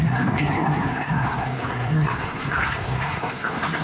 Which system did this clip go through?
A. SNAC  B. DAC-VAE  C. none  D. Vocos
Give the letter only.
A